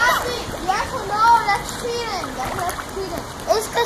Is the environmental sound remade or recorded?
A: recorded